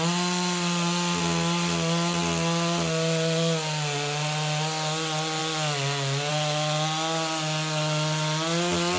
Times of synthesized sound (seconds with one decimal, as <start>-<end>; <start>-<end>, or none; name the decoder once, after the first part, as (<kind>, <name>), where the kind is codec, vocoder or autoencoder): none